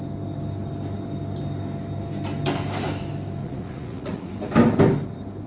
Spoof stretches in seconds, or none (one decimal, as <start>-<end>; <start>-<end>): 3.4-4.3